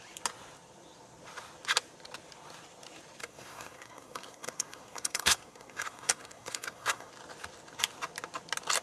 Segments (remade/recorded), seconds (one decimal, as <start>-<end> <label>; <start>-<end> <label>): 0.0-3.2 recorded; 3.2-7.1 remade; 7.1-8.8 recorded